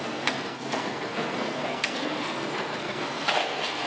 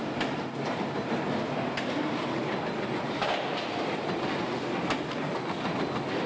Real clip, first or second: second